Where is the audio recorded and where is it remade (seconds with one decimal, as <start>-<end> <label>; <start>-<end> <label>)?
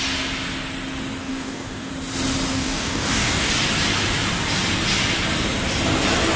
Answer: 0.0-1.2 recorded; 1.2-1.9 remade; 1.9-2.5 recorded; 2.5-3.5 remade; 3.5-6.4 recorded